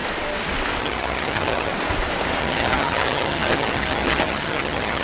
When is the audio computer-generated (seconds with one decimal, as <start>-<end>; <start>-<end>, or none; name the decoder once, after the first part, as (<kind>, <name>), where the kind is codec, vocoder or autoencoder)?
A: 0.8-1.7 (vocoder, HiFi-GAN); 2.4-5.0